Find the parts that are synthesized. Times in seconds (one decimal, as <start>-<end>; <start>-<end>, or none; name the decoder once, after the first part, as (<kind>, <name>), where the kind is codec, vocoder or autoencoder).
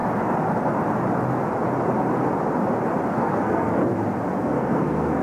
3.1-3.8 (codec, SNAC); 4.4-5.2